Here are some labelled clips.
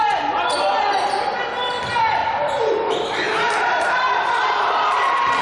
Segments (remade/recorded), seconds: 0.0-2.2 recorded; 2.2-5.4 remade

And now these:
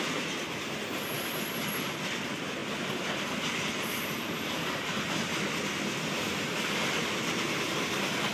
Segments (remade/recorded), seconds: 0.0-8.3 recorded

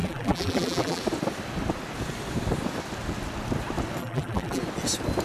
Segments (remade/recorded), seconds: 0.0-1.0 remade; 1.0-4.0 recorded; 4.0-4.6 remade; 4.6-5.2 recorded

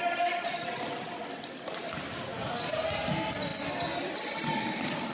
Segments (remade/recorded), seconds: 0.0-5.1 recorded

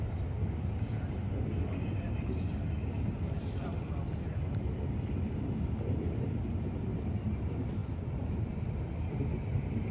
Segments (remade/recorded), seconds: 0.0-9.9 recorded